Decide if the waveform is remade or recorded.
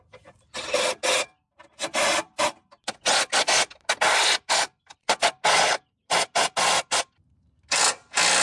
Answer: recorded